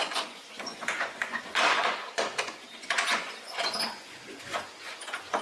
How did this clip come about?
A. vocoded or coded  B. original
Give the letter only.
A